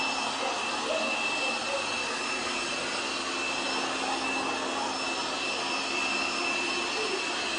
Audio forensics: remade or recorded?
recorded